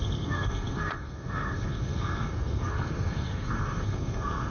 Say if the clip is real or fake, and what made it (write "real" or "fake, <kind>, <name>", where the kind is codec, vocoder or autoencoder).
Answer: fake, codec, SNAC